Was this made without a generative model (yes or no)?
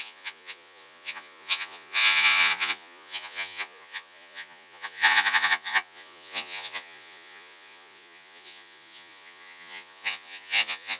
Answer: no